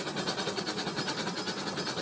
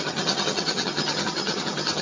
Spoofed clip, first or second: second